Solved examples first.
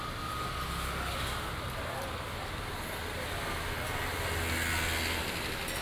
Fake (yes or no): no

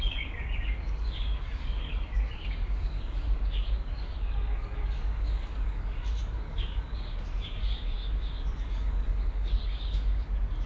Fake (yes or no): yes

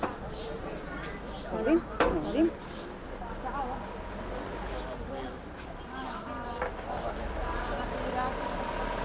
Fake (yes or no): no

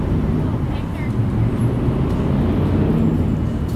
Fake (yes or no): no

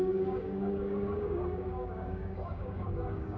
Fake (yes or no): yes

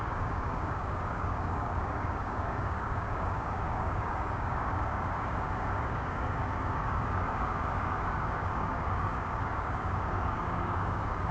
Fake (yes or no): yes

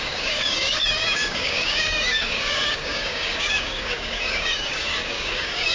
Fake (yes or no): yes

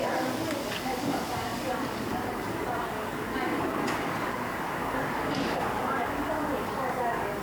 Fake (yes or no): yes